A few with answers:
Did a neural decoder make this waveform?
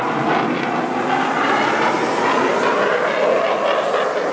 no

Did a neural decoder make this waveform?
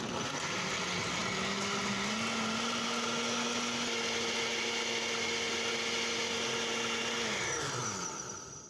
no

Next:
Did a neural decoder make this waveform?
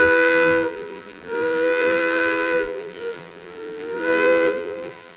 yes